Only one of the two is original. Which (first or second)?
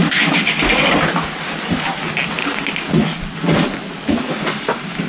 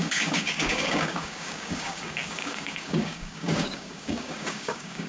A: first